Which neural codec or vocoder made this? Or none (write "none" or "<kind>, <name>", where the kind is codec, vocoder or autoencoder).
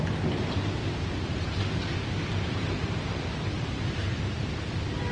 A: none